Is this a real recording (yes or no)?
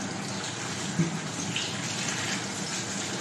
yes